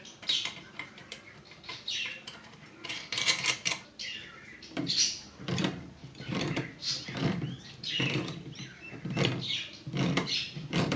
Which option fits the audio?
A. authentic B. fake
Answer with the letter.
B